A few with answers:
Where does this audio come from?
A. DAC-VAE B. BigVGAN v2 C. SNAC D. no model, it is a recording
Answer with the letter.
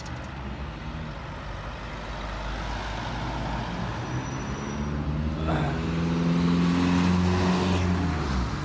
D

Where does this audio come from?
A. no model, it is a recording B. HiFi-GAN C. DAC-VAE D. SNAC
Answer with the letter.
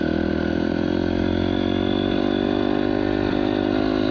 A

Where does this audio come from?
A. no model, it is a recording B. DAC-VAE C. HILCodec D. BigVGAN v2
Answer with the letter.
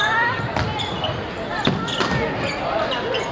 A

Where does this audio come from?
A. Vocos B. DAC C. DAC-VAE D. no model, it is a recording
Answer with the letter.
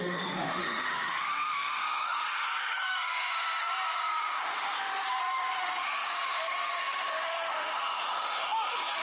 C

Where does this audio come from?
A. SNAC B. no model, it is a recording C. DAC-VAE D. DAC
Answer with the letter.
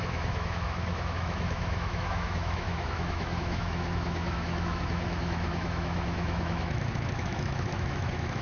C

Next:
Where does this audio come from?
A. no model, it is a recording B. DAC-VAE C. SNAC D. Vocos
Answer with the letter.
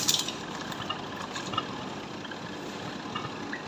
A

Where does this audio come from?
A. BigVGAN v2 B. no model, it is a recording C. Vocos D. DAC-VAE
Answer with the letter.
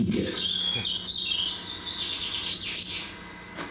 B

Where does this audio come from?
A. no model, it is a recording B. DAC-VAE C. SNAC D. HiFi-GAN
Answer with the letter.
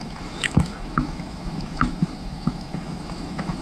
B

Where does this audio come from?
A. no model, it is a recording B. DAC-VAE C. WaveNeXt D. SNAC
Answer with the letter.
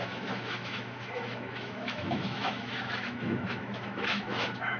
B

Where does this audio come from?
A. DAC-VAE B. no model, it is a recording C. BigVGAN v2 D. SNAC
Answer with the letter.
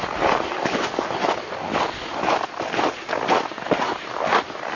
B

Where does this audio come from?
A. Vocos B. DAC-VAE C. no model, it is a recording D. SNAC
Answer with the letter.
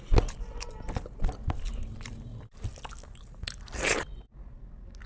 C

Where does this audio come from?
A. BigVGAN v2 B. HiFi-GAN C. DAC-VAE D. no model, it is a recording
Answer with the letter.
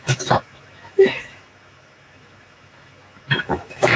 C